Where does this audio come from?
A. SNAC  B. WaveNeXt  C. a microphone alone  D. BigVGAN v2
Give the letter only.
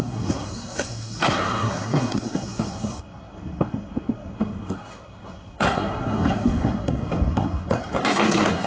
A